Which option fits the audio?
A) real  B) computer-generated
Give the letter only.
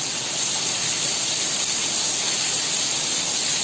A